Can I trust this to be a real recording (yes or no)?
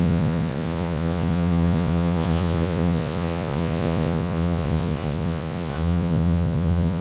no